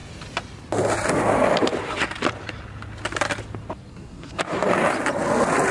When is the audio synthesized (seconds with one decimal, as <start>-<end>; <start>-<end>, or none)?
3.9-4.4